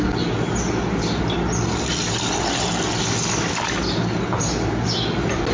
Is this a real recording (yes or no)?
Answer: yes